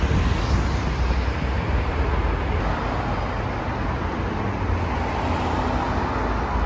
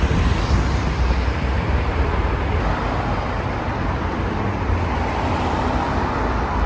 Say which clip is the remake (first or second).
second